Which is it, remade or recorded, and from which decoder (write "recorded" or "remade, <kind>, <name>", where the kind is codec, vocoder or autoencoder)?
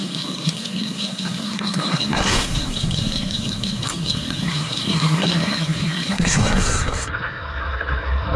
remade, codec, SNAC